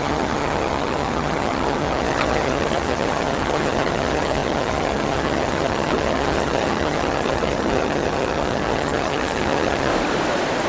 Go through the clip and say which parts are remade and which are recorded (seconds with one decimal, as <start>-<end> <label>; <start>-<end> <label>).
0.0-9.9 remade; 9.9-10.7 recorded